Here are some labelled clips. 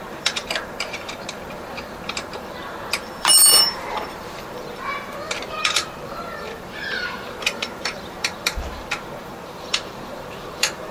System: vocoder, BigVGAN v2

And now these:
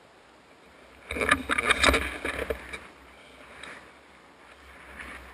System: none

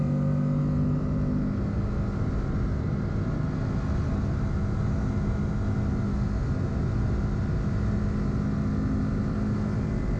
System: none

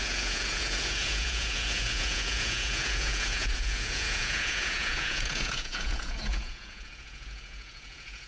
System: vocoder, Vocos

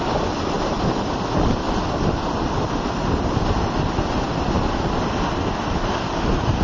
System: none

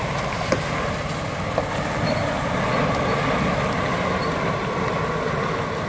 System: none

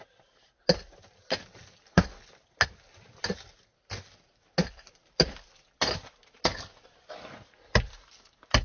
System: none